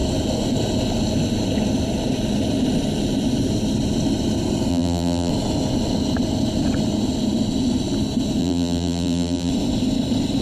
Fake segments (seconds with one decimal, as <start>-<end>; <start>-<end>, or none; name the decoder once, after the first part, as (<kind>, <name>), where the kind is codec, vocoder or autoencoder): 4.7-5.3 (vocoder, BigVGAN v2); 8.4-9.5